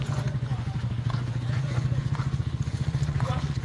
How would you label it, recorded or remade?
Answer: remade